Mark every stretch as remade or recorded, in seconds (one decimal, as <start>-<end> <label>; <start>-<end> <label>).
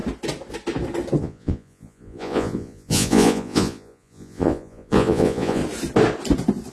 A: 0.0-1.2 recorded; 1.2-5.6 remade; 5.6-6.7 recorded